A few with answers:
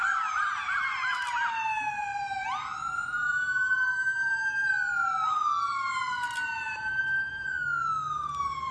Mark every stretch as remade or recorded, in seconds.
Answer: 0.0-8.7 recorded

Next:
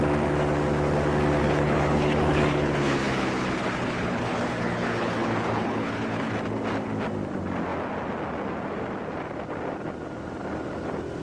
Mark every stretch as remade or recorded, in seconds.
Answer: 0.0-1.4 recorded; 1.4-6.3 remade; 6.3-11.2 recorded

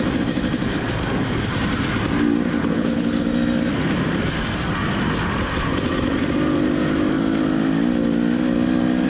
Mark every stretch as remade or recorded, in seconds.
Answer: 0.0-2.6 recorded; 2.6-3.2 remade; 3.2-9.1 recorded